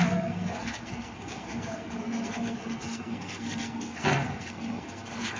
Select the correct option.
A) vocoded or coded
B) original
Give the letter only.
A